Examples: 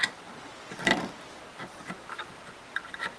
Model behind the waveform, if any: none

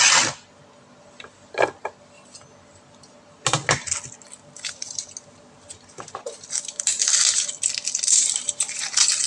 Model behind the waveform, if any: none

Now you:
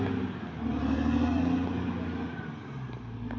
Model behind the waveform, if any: none